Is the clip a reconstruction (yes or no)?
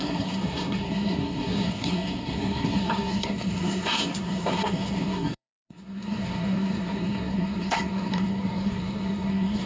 yes